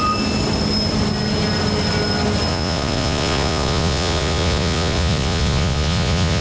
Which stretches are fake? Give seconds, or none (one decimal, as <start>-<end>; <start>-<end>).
2.5-6.4